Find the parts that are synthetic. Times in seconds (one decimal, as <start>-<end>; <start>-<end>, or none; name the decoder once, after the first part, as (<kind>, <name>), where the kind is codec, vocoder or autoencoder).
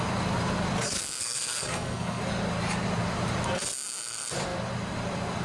1.2-2.2 (codec, SNAC)